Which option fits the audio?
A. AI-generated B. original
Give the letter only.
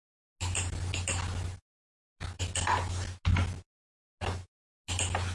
B